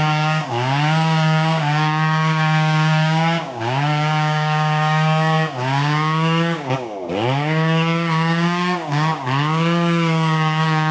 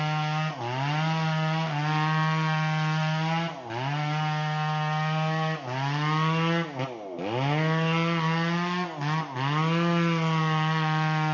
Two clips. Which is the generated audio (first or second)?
first